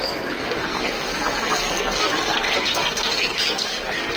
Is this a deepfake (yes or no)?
yes